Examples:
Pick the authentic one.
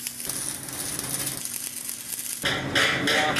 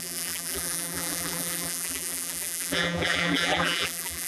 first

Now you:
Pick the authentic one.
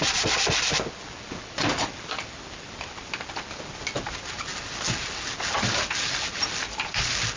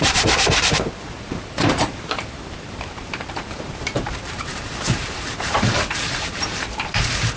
first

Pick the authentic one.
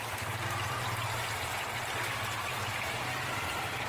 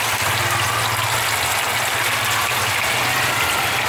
second